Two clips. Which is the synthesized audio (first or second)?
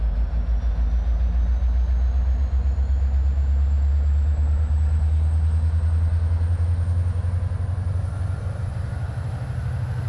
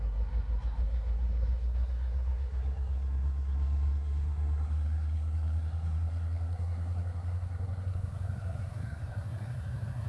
second